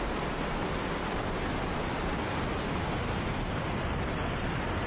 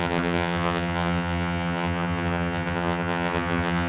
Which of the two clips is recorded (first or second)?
first